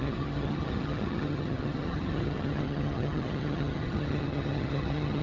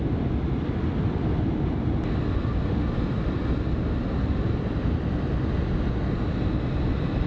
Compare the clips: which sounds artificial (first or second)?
first